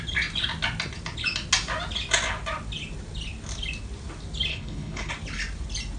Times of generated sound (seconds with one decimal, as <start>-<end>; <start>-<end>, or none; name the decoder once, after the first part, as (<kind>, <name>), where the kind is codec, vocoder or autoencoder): 4.5-5.1 (codec, HILCodec)